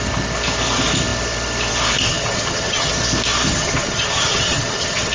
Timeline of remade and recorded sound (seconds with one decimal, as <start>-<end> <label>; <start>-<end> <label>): 0.0-2.1 recorded; 2.1-2.9 remade; 2.9-3.5 recorded; 3.5-5.1 remade